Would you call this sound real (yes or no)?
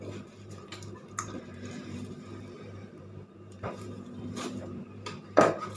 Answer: no